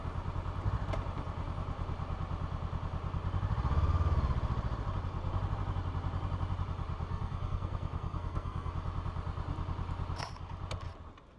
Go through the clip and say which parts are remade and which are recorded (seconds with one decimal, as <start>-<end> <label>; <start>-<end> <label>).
0.0-7.1 recorded; 7.1-8.7 remade; 8.7-11.4 recorded